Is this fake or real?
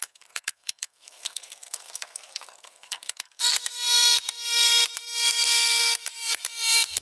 fake